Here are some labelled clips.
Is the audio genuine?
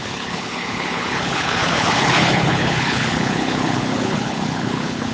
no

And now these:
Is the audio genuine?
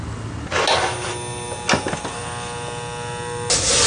yes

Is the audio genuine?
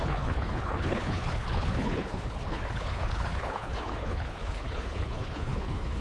no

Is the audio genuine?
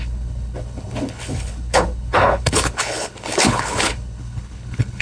no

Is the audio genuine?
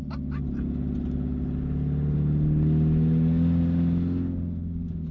yes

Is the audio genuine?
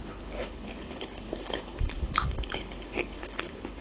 no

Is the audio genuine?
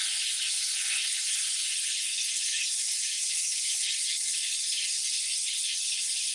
no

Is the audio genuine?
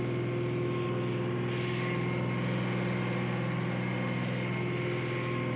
yes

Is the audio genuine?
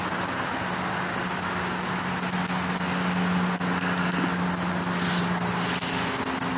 yes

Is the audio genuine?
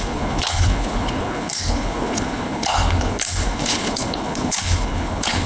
no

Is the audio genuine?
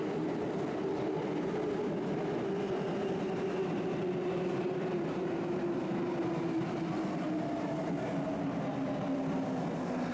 yes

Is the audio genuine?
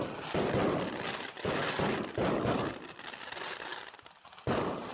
yes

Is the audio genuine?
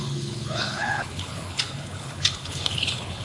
no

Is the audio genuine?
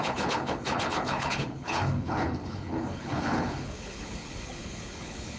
no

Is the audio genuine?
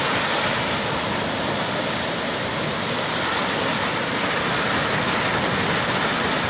yes